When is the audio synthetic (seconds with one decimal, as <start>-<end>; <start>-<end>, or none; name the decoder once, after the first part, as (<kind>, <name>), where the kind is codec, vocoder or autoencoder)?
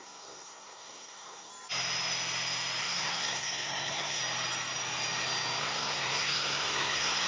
0.0-1.5 (codec, SNAC); 2.8-4.2; 5.6-7.3